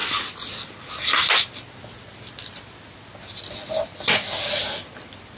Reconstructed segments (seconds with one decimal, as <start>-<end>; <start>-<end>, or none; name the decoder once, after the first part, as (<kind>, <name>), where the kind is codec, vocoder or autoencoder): 0.0-3.6 (vocoder, BigVGAN v2); 4.6-5.4